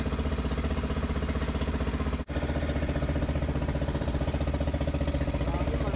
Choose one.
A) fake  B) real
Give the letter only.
B